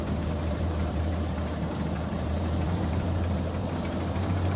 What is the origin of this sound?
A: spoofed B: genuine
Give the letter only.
A